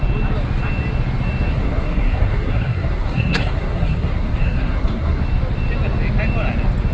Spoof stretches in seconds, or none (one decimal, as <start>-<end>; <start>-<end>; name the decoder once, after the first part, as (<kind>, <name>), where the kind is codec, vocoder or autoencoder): 1.5-5.2 (codec, SNAC)